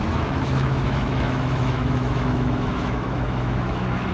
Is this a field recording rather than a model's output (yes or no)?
no